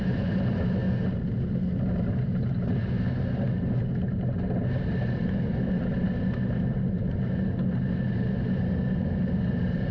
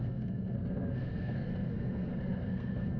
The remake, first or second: second